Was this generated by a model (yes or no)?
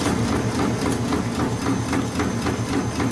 no